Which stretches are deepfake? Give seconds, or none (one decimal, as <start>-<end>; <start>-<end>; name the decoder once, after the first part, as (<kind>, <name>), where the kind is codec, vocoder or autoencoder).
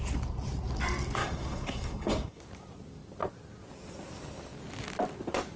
1.2-2.4 (codec, DAC)